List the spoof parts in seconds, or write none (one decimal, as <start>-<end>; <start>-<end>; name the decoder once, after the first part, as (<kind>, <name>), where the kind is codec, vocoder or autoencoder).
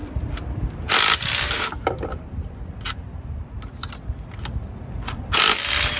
none